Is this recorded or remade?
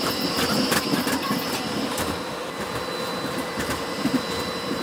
recorded